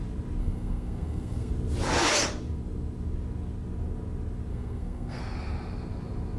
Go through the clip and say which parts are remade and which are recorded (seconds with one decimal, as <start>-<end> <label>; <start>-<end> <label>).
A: 0.0-0.4 recorded; 0.4-1.5 remade; 1.5-4.5 recorded; 4.5-5.2 remade; 5.2-6.4 recorded